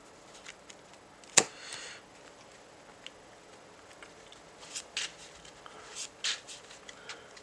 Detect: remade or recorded recorded